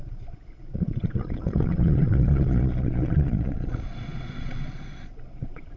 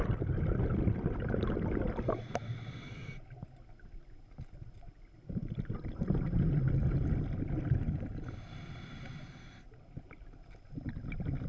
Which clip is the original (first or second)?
second